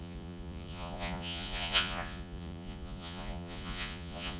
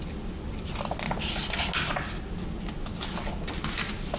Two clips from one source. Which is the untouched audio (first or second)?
second